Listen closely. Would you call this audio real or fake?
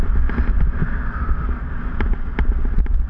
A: real